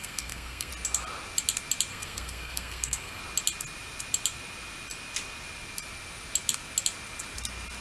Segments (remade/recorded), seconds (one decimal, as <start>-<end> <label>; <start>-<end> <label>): 0.0-0.7 remade; 0.7-1.9 recorded; 1.9-3.2 remade; 3.2-7.8 recorded